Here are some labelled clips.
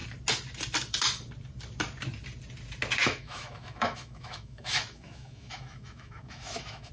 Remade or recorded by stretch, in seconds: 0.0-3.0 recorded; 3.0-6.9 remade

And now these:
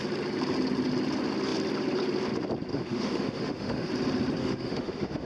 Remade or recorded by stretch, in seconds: 0.0-2.7 recorded; 2.7-3.9 remade; 3.9-4.4 recorded; 4.4-5.3 remade

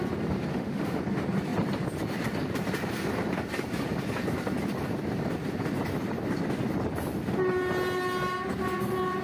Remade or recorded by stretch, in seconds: 0.0-0.5 recorded; 0.5-1.0 remade; 1.0-9.2 recorded